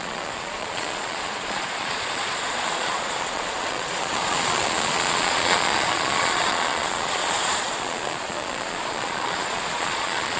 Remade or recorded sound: remade